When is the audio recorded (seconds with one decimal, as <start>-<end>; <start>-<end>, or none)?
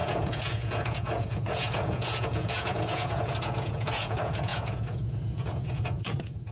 none